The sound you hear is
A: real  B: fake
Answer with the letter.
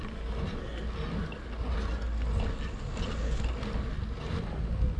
A